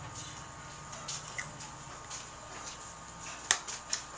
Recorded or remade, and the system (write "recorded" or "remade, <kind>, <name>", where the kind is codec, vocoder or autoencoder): recorded